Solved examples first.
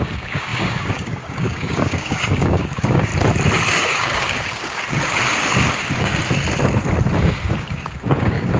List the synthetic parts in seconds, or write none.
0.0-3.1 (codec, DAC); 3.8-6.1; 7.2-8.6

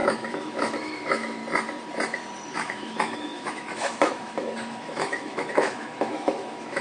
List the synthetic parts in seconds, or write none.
0.0-1.4 (autoencoder, DAC-VAE); 2.5-6.8